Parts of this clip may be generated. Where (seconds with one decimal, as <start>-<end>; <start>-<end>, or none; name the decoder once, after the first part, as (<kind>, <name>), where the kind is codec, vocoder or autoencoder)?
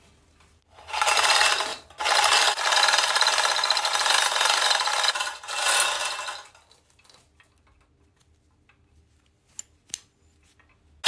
none